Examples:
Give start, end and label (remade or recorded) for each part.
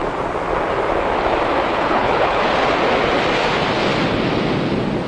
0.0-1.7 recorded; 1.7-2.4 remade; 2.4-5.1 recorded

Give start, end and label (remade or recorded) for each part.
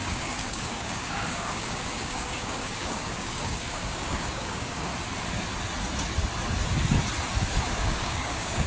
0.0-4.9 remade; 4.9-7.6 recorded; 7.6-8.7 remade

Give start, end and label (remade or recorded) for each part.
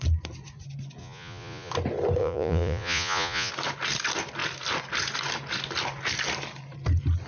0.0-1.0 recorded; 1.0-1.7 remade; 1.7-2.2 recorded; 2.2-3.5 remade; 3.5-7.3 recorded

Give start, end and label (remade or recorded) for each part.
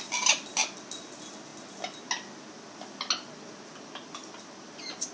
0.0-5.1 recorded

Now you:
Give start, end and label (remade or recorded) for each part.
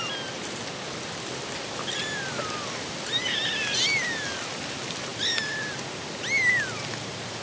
0.0-7.4 recorded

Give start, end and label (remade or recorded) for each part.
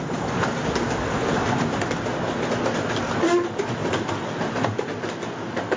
0.0-5.8 recorded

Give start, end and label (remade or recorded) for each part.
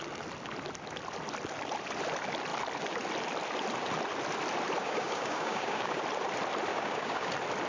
0.0-4.8 recorded; 4.8-6.0 remade; 6.0-6.7 recorded; 6.7-7.3 remade; 7.3-7.7 recorded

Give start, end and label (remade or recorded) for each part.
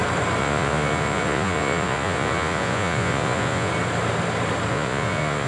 0.0-0.4 recorded; 0.4-3.7 remade; 3.7-4.7 recorded; 4.7-5.5 remade